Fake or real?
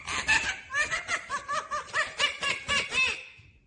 real